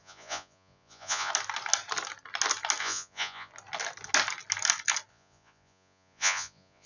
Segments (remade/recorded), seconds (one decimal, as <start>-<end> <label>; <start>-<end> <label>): 0.0-1.3 remade; 1.3-2.8 recorded; 2.8-3.5 remade; 3.5-5.1 recorded; 5.1-6.9 remade